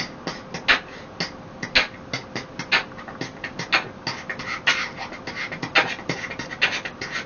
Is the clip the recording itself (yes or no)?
yes